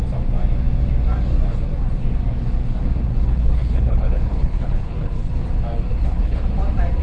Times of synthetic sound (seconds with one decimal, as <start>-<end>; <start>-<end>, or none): 3.1-5.3; 5.9-6.4